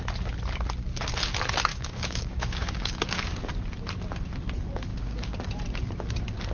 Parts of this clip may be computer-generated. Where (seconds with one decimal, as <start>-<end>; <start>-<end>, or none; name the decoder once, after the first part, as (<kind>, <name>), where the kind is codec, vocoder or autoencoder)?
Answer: 1.7-3.3 (codec, DAC); 4.9-5.4

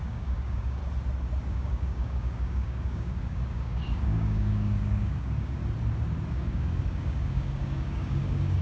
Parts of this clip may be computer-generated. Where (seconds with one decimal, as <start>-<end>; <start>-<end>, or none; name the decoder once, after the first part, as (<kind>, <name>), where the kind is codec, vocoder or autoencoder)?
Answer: 0.0-0.8 (codec, DAC); 1.4-5.6; 6.3-8.6

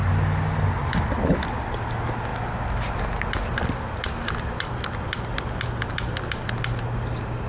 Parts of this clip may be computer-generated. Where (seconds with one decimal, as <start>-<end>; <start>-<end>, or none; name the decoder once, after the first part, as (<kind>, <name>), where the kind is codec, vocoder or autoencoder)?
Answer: none

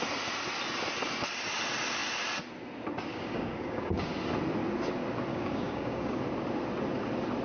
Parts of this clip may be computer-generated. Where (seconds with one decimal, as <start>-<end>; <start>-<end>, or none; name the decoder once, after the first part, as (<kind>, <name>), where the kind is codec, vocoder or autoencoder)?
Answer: 3.1-4.1 (codec, DAC); 5.3-6.2

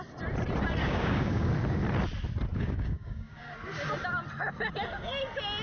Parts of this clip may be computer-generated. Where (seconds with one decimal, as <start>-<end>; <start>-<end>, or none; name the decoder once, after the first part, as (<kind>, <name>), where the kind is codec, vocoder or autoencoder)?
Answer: 0.8-1.5 (codec, DAC); 2.5-3.5

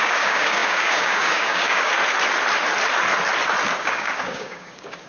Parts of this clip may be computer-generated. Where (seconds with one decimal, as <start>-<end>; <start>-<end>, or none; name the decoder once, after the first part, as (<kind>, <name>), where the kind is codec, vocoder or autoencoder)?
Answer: 0.0-1.9 (codec, DAC); 3.8-5.1

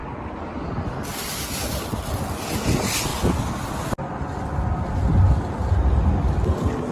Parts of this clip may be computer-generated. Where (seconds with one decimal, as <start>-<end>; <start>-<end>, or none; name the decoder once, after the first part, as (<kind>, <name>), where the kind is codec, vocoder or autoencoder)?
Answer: none